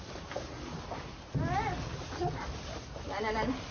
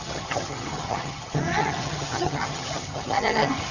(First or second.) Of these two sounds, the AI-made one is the second